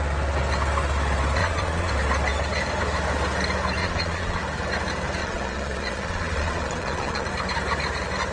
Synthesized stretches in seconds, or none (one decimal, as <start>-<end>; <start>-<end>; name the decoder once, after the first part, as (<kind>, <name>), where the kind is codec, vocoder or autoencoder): 1.4-1.9 (vocoder, Vocos); 3.8-4.4; 5.2-7.3